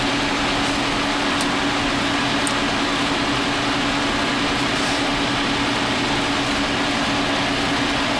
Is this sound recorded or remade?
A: recorded